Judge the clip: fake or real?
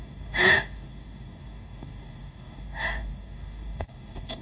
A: fake